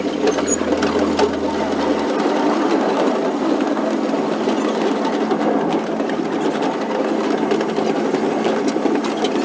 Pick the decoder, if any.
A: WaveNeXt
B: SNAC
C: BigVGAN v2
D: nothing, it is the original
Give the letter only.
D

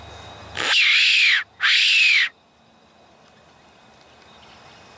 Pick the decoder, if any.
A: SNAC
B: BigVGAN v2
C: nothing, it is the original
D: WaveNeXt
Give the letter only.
C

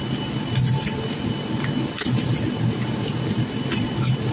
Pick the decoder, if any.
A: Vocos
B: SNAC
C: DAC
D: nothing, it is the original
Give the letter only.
D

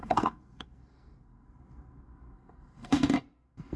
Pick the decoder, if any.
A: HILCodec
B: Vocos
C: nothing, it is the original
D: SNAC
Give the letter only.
D